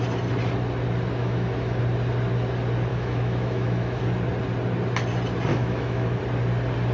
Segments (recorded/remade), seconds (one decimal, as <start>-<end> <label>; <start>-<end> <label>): 0.0-1.2 recorded; 1.2-1.8 remade; 1.8-2.9 recorded; 2.9-4.0 remade; 4.0-5.5 recorded; 5.5-6.2 remade; 6.2-6.9 recorded